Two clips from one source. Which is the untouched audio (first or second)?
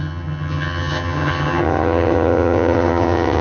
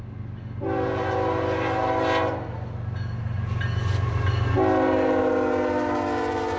second